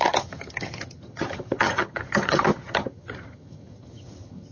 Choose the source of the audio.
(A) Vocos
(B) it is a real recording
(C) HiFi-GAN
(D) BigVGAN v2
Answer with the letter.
C